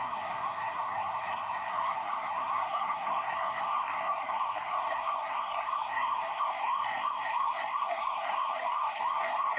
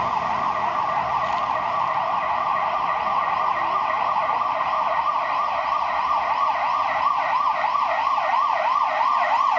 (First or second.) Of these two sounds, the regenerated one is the first